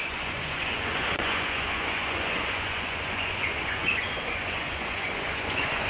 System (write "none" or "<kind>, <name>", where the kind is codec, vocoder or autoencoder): vocoder, Vocos